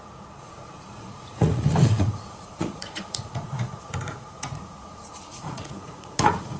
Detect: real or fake fake